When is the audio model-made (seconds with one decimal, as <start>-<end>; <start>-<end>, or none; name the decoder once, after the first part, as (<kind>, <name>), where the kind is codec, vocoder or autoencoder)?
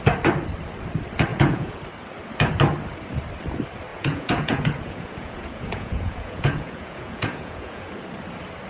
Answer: 1.3-1.8 (vocoder, Vocos); 3.9-8.0